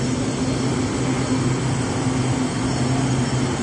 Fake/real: real